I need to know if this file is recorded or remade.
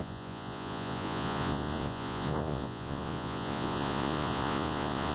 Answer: remade